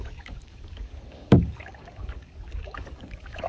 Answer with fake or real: fake